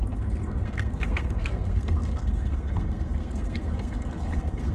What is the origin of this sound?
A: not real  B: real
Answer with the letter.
A